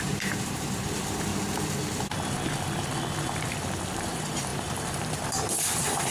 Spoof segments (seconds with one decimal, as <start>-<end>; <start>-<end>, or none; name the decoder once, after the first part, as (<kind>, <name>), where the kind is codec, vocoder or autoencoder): 0.0-1.3 (vocoder, BigVGAN v2); 3.9-6.1